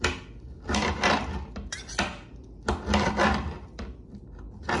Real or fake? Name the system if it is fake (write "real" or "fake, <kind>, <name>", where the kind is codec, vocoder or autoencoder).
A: real